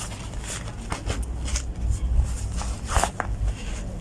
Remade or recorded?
recorded